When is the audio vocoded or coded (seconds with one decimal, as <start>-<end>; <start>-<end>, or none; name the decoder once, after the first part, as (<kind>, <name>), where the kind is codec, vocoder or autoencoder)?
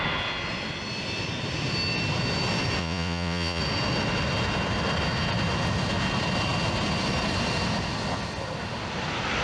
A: 2.8-3.6 (vocoder, Vocos)